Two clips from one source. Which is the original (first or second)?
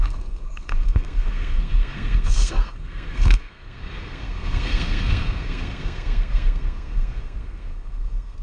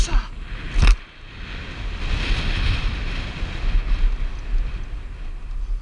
second